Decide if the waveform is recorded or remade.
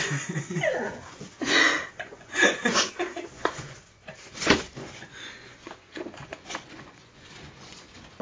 remade